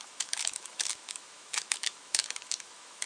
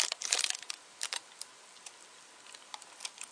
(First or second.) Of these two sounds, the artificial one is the first